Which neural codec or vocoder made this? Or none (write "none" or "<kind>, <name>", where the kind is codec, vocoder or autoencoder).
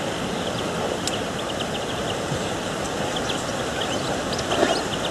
none